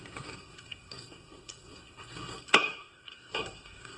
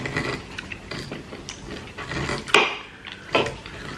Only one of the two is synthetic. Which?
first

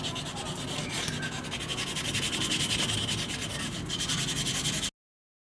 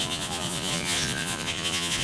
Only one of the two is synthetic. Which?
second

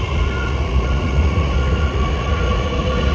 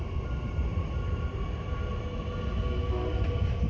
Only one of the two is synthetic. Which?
first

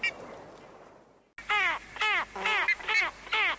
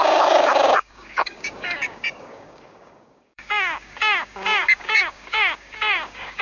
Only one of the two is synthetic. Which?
second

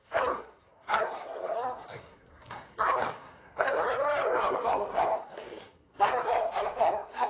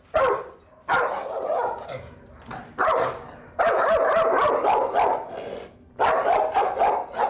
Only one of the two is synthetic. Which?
first